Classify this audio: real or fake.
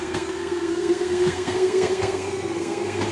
fake